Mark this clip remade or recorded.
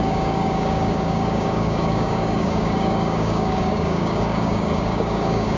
remade